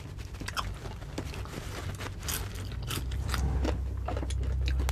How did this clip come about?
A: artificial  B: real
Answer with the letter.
B